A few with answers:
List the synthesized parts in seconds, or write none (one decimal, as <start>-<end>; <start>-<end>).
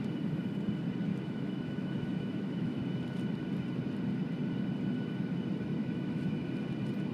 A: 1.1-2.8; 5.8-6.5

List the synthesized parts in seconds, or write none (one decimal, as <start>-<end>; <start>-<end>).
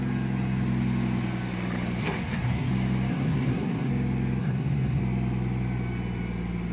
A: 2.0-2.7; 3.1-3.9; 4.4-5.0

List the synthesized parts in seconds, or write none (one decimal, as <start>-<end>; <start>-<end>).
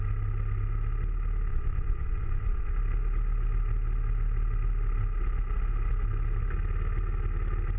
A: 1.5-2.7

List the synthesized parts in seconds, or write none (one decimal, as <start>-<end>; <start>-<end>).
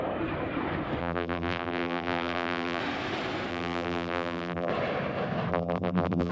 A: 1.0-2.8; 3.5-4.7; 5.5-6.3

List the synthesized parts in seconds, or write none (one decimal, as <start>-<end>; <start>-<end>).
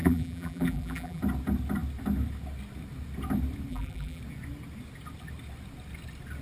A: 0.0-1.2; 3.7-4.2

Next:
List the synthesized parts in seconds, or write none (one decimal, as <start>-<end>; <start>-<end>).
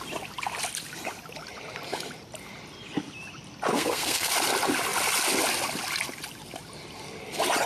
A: 3.7-4.3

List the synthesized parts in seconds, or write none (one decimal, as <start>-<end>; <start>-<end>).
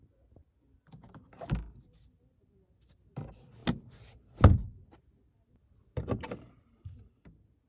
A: none